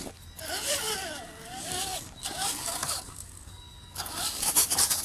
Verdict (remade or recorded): remade